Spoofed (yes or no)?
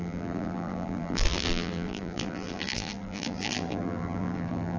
yes